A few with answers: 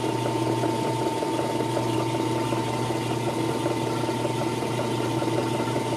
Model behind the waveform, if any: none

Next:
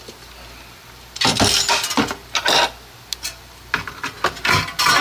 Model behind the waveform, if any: none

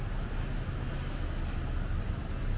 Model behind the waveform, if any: none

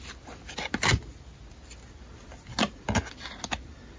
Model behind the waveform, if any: none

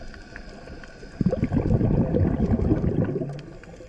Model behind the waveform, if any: none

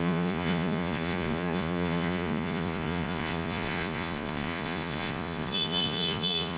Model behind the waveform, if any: vocoder, Vocos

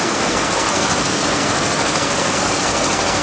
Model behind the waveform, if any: codec, SNAC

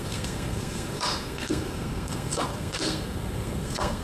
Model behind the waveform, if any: codec, SNAC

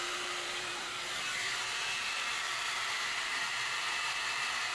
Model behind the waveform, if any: vocoder, BigVGAN v2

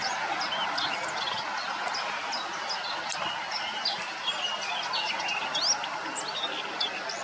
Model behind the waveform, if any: none